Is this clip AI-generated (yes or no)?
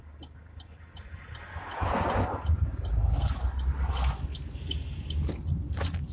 no